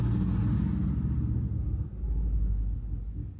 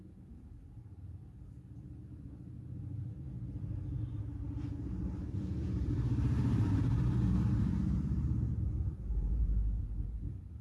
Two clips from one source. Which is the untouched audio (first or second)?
first